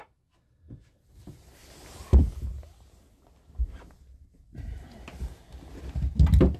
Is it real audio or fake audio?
real